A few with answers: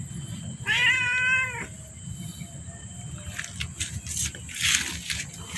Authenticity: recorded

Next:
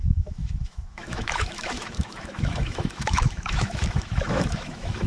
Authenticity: remade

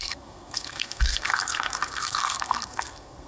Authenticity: remade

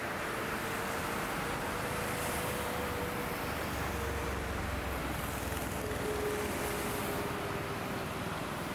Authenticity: recorded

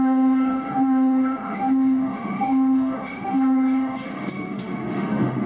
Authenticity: remade